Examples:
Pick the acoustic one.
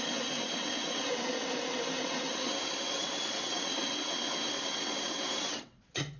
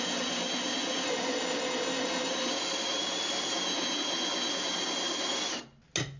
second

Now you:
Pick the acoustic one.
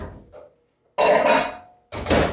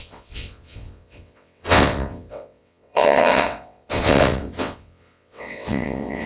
first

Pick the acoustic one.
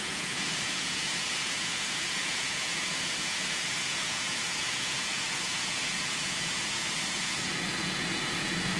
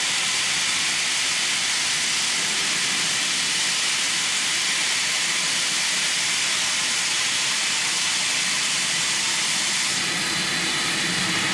second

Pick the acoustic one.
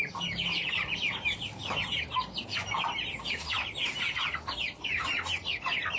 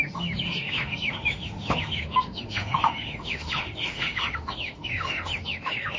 first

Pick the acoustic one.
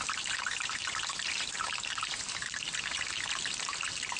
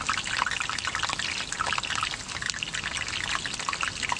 second